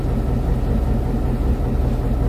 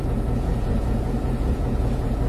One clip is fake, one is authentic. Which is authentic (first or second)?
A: first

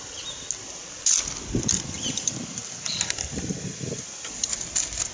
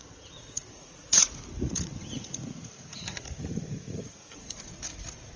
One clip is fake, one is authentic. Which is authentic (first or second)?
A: first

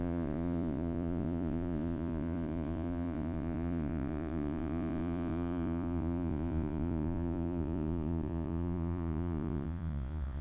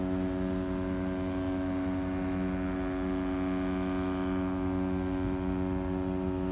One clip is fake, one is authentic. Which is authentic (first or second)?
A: second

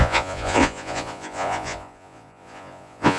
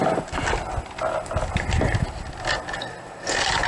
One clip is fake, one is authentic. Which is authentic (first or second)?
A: second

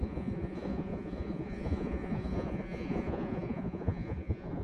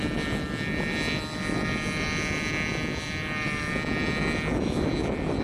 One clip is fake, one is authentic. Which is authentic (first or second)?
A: second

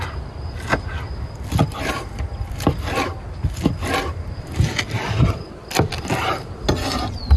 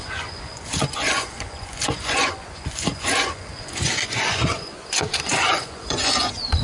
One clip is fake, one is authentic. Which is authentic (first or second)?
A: first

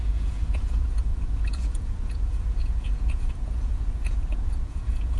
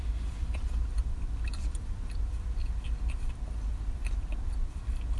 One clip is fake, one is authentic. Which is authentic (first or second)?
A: second